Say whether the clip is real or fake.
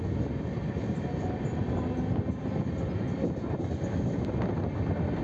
real